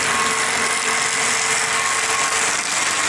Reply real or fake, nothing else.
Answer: real